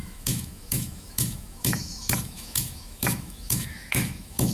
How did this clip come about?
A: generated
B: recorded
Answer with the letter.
A